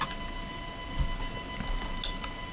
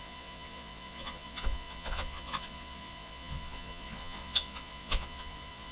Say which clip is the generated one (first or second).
second